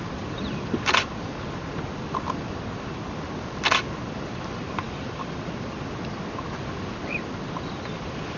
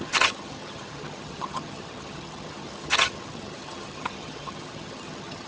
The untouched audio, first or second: first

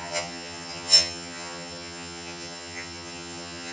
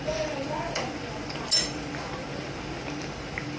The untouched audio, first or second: second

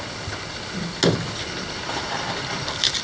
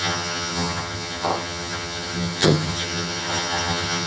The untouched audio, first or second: first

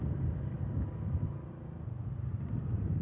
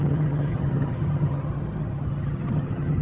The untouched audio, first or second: first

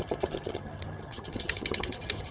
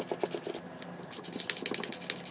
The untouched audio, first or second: second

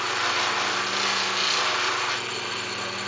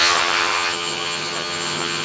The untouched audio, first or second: first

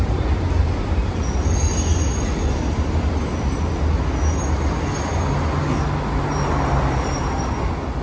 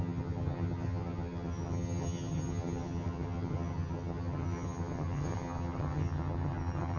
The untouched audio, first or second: first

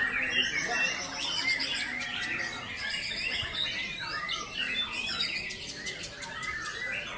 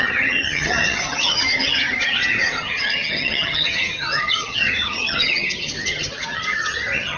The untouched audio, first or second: first